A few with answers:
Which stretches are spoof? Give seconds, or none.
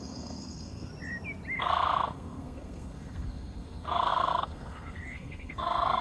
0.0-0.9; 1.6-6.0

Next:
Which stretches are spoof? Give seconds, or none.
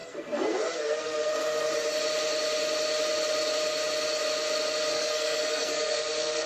0.0-1.7; 4.9-6.5